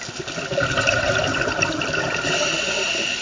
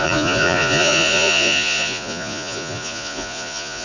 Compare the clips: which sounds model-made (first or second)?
second